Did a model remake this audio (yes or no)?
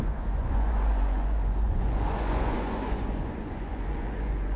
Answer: yes